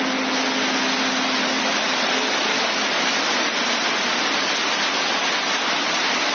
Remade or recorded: recorded